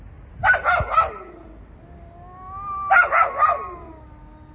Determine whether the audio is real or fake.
real